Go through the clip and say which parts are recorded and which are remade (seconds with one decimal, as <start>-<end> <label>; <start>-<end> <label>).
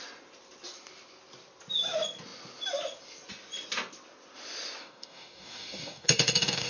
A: 0.0-4.8 recorded; 4.8-6.7 remade